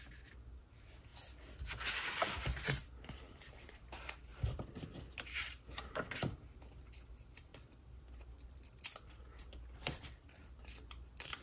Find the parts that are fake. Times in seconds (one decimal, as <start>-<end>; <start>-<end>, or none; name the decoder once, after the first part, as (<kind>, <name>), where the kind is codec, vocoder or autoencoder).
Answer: 2.8-3.5 (vocoder, BigVGAN v2); 4.3-5.0; 7.5-10.6